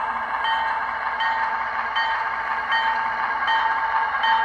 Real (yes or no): yes